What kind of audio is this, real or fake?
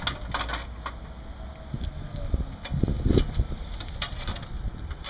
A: real